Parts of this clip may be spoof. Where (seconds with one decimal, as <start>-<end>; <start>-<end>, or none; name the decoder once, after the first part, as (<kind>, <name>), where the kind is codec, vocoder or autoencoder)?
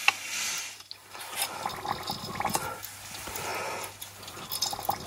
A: 3.5-4.4 (vocoder, BigVGAN v2)